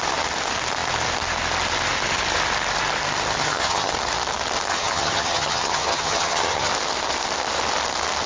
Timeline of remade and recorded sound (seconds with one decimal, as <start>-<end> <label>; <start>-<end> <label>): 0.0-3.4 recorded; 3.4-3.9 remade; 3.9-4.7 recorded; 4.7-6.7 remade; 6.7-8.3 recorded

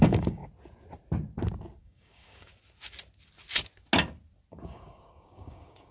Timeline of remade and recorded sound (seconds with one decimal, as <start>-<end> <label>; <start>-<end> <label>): 0.0-0.4 remade; 0.4-1.8 recorded; 1.8-2.5 remade; 2.5-4.5 recorded; 4.5-5.9 remade

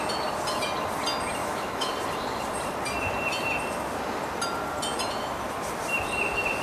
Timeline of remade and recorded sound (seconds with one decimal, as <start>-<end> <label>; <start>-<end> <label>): 0.0-1.4 recorded; 1.4-1.9 remade; 1.9-6.6 recorded